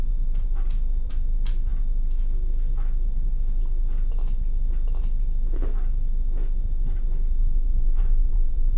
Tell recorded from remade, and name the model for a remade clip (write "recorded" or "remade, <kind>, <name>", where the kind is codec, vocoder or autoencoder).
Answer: remade, vocoder, BigVGAN v2